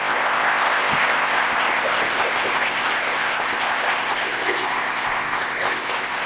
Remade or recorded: remade